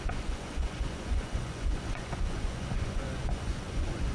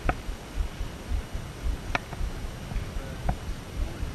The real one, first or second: second